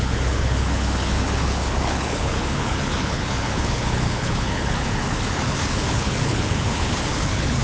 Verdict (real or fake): fake